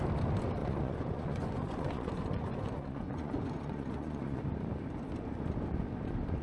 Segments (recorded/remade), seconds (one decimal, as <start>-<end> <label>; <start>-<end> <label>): 0.0-0.6 recorded; 0.6-4.4 remade; 4.4-6.4 recorded